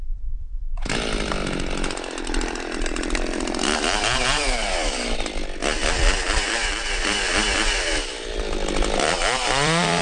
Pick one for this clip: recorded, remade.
remade